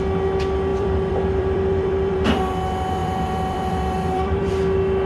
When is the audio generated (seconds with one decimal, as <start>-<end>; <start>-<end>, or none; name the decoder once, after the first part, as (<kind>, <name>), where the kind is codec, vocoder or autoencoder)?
0.7-2.5 (vocoder, BigVGAN v2); 3.0-4.5

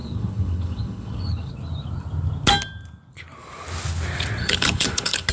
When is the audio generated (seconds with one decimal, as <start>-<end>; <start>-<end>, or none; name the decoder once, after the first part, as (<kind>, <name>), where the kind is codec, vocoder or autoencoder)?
0.0-1.5 (codec, HILCodec); 4.4-5.3

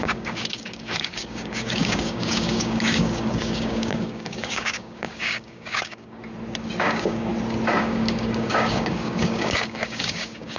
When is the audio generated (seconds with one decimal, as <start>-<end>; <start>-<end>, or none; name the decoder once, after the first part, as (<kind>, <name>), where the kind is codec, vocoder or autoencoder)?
0.0-6.2 (codec, DAC); 6.8-7.3; 7.8-10.6